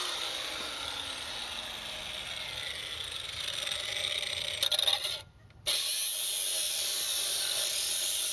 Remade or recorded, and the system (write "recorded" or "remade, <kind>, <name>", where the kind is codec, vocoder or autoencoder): recorded